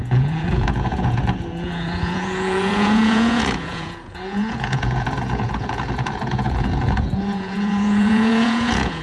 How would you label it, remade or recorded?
remade